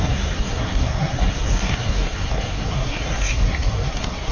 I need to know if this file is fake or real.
fake